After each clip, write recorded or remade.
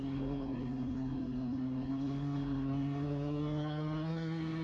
remade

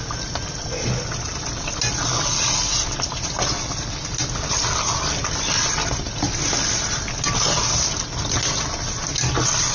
recorded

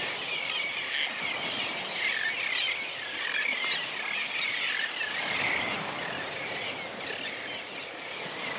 recorded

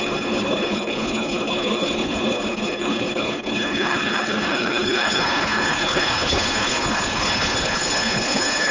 remade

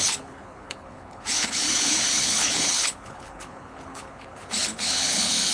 remade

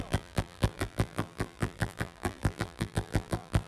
remade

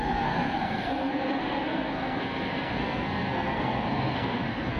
remade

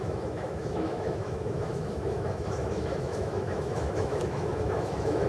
remade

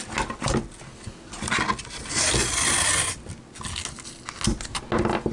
recorded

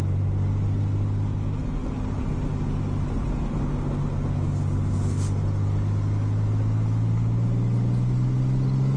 recorded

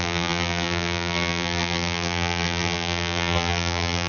remade